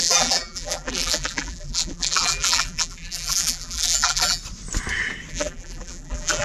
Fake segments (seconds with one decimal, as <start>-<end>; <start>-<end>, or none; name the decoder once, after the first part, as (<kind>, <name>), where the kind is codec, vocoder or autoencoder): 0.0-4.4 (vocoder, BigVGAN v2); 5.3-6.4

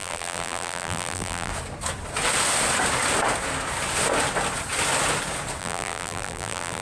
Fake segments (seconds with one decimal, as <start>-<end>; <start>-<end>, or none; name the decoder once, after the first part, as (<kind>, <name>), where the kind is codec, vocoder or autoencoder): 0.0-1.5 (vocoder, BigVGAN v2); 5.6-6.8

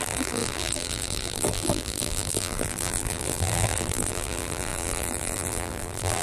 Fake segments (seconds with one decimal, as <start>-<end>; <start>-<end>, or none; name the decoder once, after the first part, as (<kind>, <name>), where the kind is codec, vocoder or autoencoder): 0.0-6.2 (vocoder, BigVGAN v2)

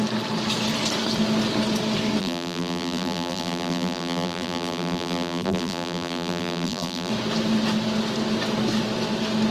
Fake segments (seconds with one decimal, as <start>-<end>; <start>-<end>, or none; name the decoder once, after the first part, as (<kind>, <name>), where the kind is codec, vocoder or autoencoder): 2.2-7.1 (vocoder, BigVGAN v2)

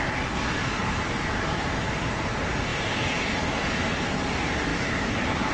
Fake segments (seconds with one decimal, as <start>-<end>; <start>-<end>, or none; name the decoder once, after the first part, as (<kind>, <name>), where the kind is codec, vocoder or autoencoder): 0.8-2.0 (vocoder, BigVGAN v2); 4.7-5.5

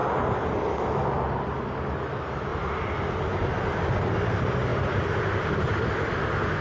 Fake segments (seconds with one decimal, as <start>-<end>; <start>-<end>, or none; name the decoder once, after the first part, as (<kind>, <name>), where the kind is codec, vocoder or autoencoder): 2.5-3.5 (vocoder, BigVGAN v2); 4.7-5.2

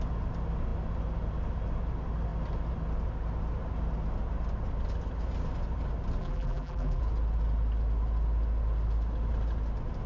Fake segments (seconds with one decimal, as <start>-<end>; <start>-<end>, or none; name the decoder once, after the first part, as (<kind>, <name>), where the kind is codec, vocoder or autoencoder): 6.2-7.0 (vocoder, BigVGAN v2)

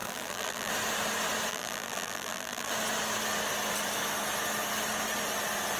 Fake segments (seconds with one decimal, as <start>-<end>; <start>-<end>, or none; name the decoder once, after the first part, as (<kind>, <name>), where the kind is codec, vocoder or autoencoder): 0.0-0.7 (vocoder, BigVGAN v2); 1.5-2.7